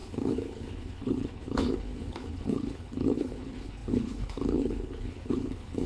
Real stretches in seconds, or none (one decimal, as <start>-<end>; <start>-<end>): none